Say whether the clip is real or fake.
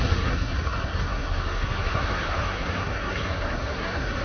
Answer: fake